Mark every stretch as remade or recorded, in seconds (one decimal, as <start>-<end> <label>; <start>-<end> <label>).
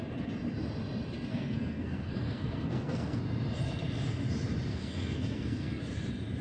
0.0-1.3 recorded; 1.3-3.2 remade; 3.2-4.7 recorded; 4.7-5.8 remade; 5.8-6.4 recorded